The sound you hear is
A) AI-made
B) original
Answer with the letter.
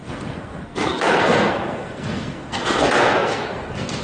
A